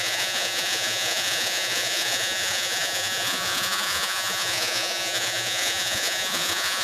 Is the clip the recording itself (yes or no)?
no